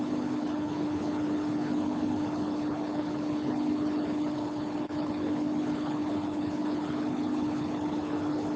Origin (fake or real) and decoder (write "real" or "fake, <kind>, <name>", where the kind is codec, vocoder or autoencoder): fake, codec, HILCodec